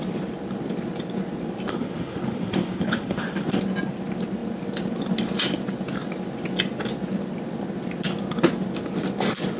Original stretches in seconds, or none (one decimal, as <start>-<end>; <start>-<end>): 0.0-1.7; 3.6-9.6